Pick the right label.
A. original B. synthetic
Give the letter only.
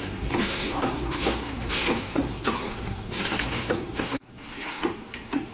B